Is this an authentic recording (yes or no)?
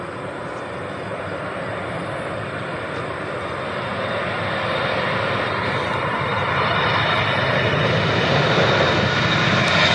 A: yes